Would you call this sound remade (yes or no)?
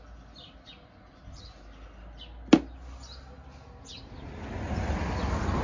no